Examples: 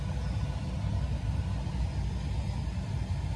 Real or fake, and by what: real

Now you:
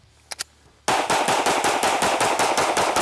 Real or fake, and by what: real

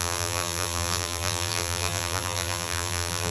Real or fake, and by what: fake, vocoder, BigVGAN v2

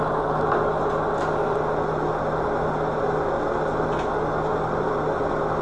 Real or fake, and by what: real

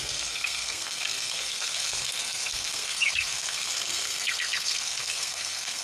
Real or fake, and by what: fake, codec, SNAC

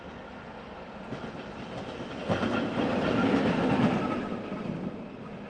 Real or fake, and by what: real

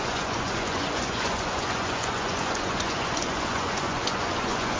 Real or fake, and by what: fake, vocoder, Vocos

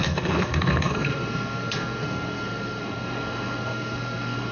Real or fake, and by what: fake, codec, SNAC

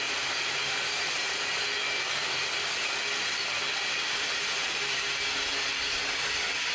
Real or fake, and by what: real